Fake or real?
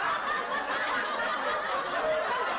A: real